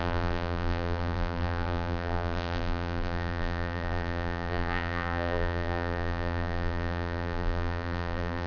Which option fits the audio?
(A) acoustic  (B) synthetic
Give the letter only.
B